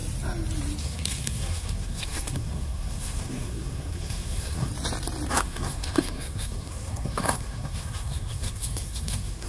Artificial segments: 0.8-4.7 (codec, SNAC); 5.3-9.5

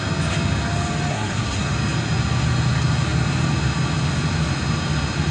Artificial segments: 1.1-1.7 (codec, SNAC)

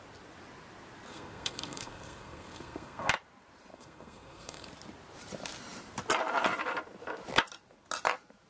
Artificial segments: 1.1-3.1 (codec, SNAC); 3.7-4.7

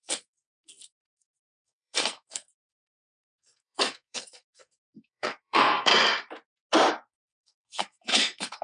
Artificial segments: 0.0-5.9 (codec, SNAC); 6.9-8.6

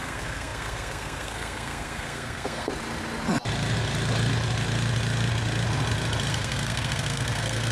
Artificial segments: 0.0-2.7 (codec, SNAC); 6.3-7.7

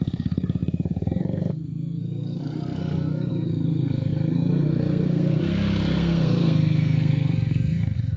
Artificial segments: 0.0-8.2 (codec, SNAC)

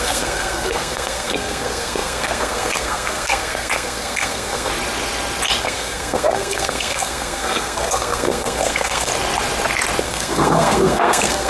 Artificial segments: 0.0-4.7 (codec, SNAC); 5.6-9.1; 10.0-11.5